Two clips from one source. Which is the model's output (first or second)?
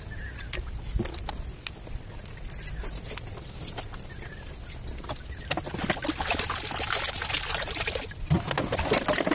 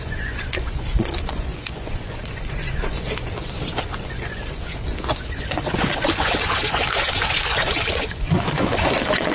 second